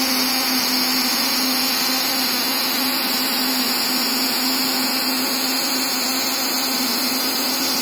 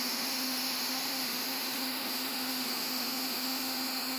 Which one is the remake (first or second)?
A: second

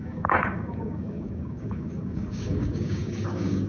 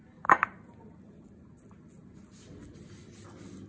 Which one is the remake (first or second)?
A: first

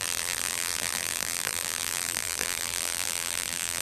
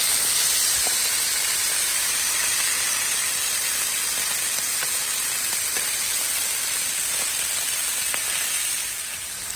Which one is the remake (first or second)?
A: first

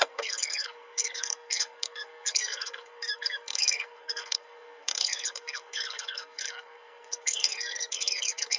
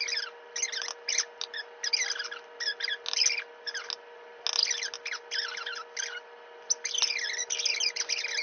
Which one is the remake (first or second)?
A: first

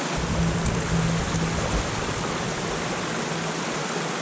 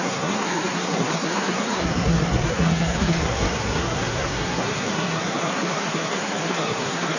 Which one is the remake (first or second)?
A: second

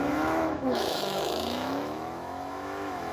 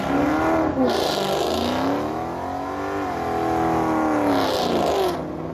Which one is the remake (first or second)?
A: first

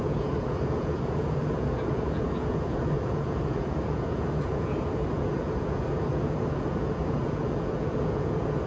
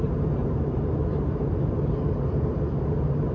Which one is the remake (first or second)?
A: first